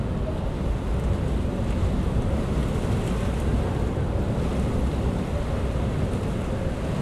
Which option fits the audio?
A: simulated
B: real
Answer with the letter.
B